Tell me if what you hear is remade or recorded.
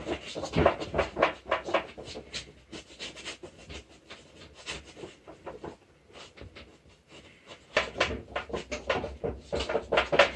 recorded